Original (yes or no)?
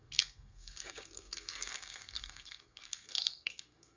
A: no